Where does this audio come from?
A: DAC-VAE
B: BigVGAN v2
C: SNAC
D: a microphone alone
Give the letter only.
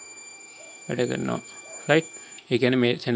A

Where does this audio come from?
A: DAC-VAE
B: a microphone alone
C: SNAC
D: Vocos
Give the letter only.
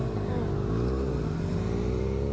B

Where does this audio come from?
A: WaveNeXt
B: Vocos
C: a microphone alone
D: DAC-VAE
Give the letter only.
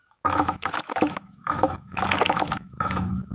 D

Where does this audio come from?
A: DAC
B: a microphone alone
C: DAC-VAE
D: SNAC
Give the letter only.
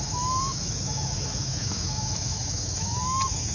C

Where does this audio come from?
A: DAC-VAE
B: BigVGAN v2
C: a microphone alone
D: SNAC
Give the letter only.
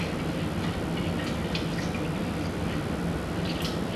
C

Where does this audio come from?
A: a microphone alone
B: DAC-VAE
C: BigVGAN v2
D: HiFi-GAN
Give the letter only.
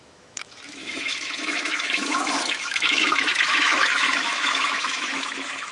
B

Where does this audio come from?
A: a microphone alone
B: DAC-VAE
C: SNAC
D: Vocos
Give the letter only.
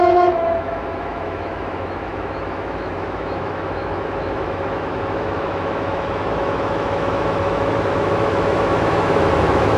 B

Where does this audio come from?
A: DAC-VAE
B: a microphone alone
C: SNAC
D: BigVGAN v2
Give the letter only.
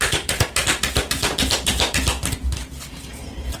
B